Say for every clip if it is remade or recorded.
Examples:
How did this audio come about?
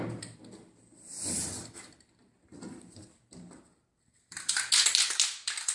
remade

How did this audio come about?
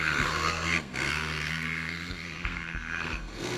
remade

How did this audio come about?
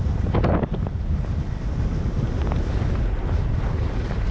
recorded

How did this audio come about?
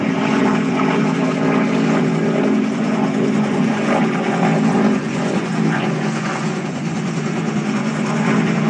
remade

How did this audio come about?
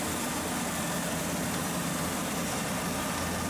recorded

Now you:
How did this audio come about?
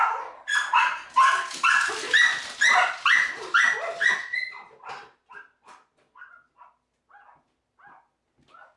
recorded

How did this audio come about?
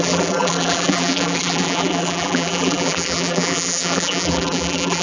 remade